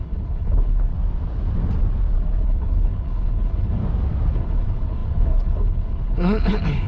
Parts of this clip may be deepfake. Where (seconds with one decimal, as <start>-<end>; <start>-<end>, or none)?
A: 0.0-0.9; 2.4-3.8; 4.3-6.9